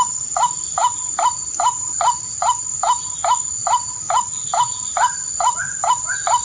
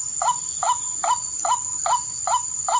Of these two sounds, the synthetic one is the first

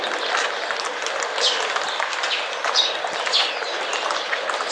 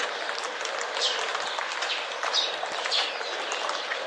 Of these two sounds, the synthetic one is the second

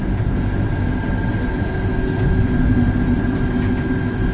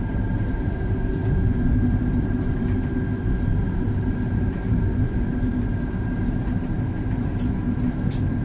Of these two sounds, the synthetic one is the second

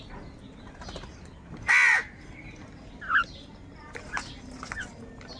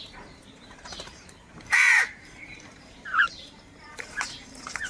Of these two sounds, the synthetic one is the second